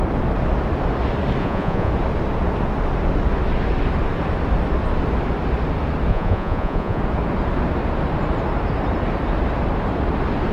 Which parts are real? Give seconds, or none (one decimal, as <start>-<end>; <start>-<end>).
0.0-1.4; 1.9-6.1; 7.0-10.5